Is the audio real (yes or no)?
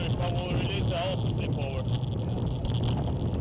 yes